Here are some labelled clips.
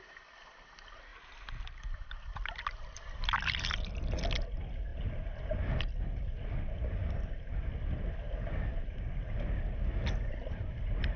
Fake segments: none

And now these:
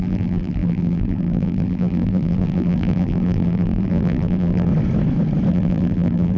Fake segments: 0.0-4.7 (vocoder, BigVGAN v2); 5.5-6.4

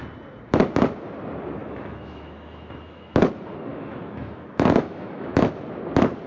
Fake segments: 1.6-3.3 (autoencoder, DAC-VAE); 3.7-5.5

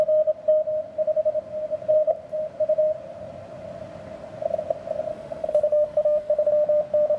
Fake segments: 5.1-6.5 (autoencoder, DAC-VAE)

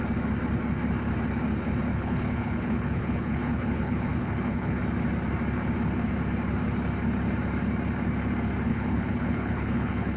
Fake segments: 1.9-4.8 (codec, HILCodec); 8.7-10.2